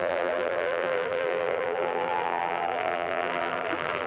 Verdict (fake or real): fake